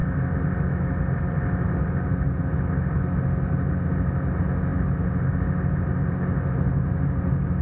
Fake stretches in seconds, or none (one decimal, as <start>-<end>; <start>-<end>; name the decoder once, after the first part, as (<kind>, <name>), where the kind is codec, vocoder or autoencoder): none